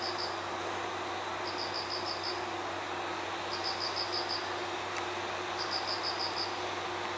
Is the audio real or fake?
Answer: real